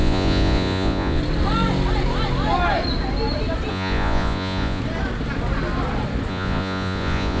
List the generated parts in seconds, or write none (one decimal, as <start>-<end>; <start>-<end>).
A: 0.0-1.2; 3.7-4.8; 6.3-7.4